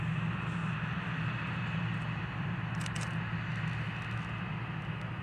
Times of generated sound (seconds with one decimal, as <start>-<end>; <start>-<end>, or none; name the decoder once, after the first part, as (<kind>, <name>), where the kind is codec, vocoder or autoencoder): none